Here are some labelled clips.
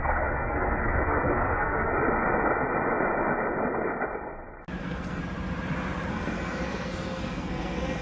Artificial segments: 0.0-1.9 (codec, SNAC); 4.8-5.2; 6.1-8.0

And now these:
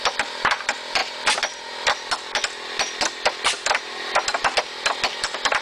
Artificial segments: none

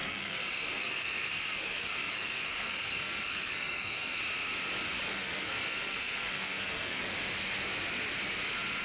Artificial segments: 0.0-4.2 (codec, SNAC); 5.1-7.0

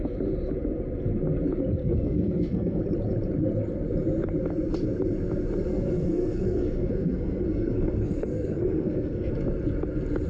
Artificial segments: 1.8-2.8 (codec, SNAC); 5.7-9.3